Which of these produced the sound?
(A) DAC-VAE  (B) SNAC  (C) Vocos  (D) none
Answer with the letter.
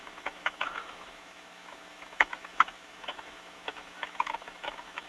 A